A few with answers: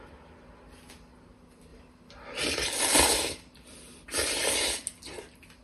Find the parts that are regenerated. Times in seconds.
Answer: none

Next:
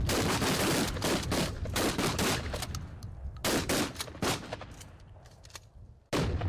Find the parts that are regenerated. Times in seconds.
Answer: none

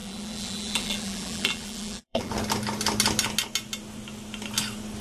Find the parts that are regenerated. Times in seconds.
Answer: 0.0-2.3 (vocoder, BigVGAN v2)

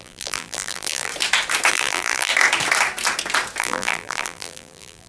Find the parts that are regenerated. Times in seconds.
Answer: 0.0-1.1 (vocoder, BigVGAN v2); 1.7-2.3; 3.6-5.1

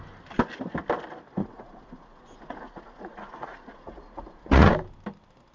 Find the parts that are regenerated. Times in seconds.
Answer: 1.4-4.7 (vocoder, Vocos)